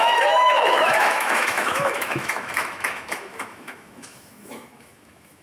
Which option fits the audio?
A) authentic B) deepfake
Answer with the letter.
B